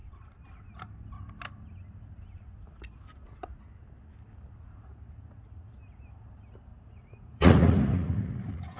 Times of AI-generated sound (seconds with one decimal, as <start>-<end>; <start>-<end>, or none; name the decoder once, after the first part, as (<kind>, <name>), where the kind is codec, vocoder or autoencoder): 6.7-8.8 (vocoder, Vocos)